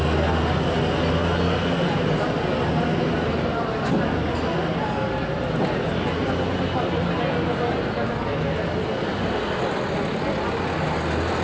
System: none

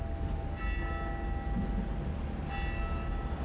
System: none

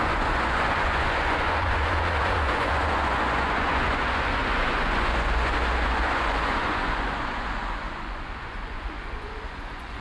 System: vocoder, Vocos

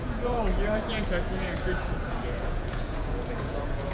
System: vocoder, Vocos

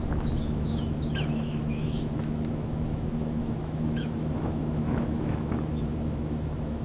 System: autoencoder, DAC-VAE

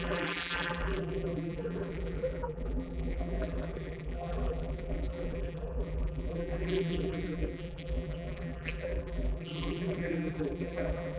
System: vocoder, BigVGAN v2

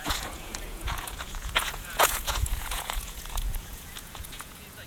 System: vocoder, Vocos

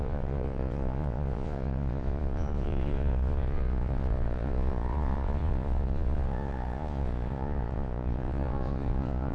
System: vocoder, Vocos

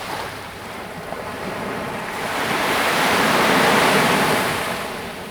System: vocoder, BigVGAN v2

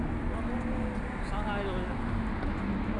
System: none